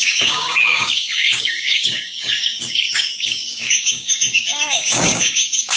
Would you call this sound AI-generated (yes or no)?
yes